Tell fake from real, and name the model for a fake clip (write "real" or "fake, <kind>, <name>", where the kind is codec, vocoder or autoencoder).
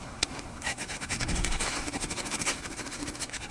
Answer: fake, codec, SNAC